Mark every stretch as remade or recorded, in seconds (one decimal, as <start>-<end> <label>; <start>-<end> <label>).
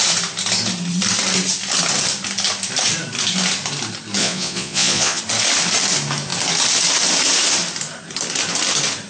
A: 0.0-4.2 recorded; 4.2-5.2 remade; 5.2-9.1 recorded